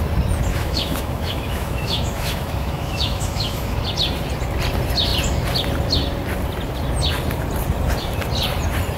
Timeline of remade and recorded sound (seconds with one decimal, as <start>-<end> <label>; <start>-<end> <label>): 0.0-0.5 recorded; 0.5-3.8 remade; 3.8-9.0 recorded